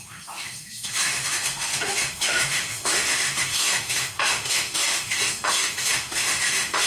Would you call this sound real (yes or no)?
no